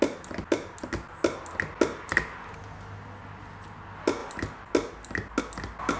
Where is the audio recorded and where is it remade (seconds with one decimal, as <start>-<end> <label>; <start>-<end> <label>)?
0.0-6.0 recorded